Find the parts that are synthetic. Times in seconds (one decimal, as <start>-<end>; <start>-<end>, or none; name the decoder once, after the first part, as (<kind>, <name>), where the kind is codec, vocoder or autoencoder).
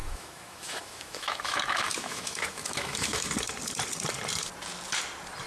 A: 0.0-3.3 (autoencoder, DAC-VAE)